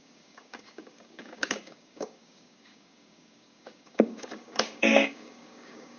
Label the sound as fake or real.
fake